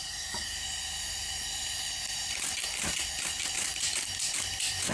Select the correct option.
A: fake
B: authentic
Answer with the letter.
B